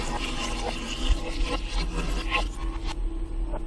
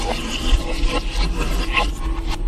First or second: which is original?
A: first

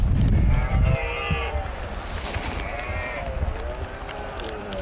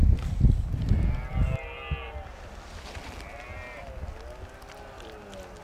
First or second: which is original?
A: second